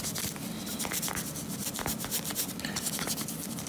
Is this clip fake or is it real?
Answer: real